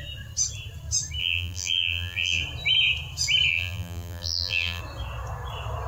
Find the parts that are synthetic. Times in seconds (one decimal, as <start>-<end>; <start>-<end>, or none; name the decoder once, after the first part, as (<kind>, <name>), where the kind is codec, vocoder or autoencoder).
1.2-2.4 (vocoder, BigVGAN v2); 3.5-4.8